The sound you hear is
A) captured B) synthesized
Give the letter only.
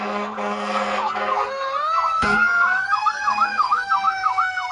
B